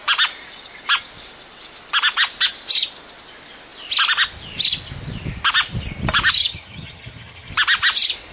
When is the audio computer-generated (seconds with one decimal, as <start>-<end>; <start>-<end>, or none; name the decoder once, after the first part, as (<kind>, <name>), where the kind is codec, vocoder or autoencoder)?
6.4-7.5 (vocoder, HiFi-GAN)